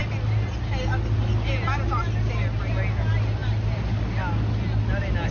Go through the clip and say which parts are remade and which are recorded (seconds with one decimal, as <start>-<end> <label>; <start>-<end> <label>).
0.0-5.3 recorded